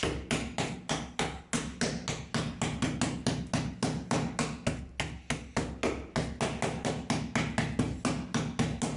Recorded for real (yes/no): yes